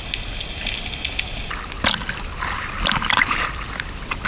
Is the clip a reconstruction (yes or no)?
no